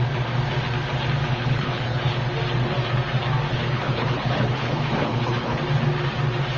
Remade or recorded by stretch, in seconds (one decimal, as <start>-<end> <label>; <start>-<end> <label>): 0.0-1.3 recorded; 1.3-2.1 remade; 2.1-3.5 recorded; 3.5-5.6 remade; 5.6-6.6 recorded